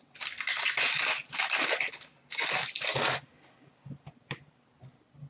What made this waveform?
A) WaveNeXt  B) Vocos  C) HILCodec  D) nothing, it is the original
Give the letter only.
D